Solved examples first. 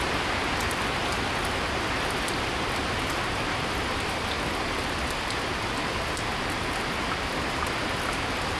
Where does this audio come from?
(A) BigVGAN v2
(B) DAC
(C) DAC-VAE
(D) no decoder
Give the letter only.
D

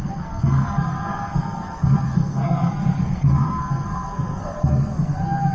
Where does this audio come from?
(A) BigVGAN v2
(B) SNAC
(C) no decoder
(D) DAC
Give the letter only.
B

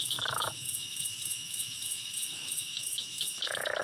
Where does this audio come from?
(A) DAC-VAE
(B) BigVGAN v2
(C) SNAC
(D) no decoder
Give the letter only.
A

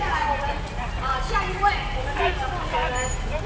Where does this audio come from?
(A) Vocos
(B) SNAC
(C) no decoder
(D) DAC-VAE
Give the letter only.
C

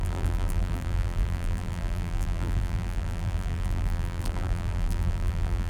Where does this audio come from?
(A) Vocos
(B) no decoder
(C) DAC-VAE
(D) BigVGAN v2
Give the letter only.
D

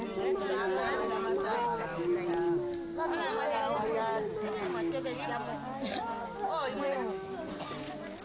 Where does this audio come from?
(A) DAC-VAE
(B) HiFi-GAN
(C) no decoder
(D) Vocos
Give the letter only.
C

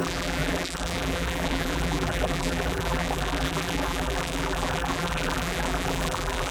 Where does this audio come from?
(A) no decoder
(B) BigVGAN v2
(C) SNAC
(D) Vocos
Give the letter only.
B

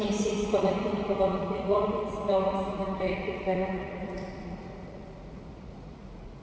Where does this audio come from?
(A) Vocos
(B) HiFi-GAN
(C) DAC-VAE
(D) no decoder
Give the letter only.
A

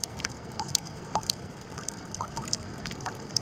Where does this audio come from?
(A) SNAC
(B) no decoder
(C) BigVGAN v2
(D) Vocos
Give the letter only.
A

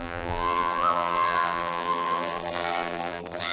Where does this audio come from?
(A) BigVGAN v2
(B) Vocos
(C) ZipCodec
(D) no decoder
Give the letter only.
A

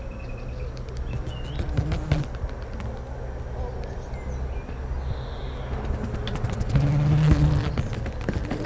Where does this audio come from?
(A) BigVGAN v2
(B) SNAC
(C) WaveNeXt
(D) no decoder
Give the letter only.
D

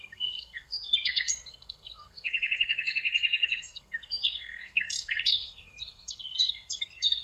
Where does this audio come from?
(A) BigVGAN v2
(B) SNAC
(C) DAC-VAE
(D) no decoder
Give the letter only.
B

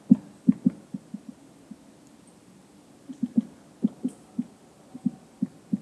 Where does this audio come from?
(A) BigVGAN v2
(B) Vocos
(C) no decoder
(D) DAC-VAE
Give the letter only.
C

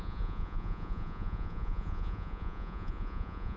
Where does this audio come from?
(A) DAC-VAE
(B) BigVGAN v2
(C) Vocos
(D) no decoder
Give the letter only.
C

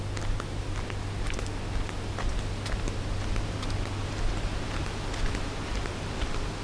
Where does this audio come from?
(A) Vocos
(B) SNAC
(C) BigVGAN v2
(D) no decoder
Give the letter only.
D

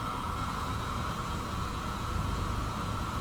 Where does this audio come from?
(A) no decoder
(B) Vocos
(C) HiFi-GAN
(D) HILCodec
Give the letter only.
B